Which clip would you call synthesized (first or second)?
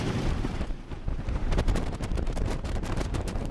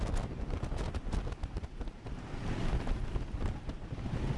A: first